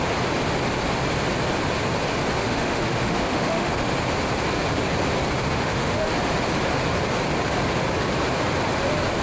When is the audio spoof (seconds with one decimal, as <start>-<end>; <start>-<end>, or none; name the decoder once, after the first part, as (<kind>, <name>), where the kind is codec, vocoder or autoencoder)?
2.4-3.9 (autoencoder, DAC-VAE); 5.4-6.1